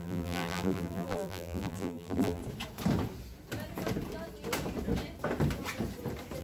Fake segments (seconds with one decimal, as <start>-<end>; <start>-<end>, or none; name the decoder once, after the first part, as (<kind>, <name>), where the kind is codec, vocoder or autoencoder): 0.0-2.4 (vocoder, BigVGAN v2)